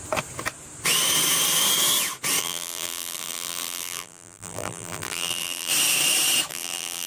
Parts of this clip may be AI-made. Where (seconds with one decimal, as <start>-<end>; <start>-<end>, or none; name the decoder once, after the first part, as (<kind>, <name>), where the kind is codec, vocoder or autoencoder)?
2.4-5.7 (vocoder, BigVGAN v2); 6.5-7.1